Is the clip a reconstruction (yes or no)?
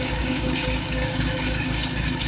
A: yes